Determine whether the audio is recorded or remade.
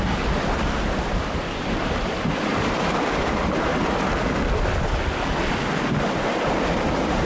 recorded